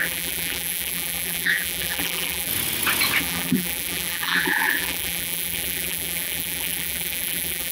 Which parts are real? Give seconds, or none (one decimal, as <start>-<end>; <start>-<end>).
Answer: 2.5-3.2